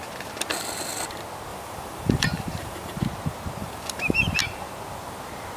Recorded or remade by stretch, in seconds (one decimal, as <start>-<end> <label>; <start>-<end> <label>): 0.0-1.5 recorded; 1.5-3.0 remade; 3.0-3.6 recorded; 3.6-4.4 remade; 4.4-5.6 recorded